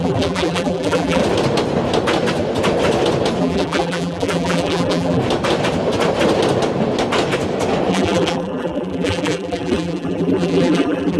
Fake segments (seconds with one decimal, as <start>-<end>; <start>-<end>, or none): 0.0-1.2; 3.4-5.2; 7.9-11.2